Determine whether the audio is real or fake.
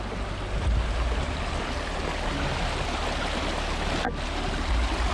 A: real